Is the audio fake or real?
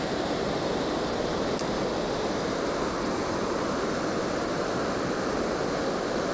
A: real